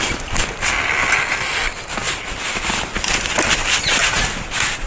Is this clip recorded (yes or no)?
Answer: yes